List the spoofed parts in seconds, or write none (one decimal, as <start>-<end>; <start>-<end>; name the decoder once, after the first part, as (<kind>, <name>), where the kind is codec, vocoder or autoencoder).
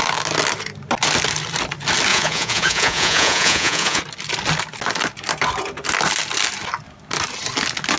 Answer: 2.1-4.0 (vocoder, Vocos)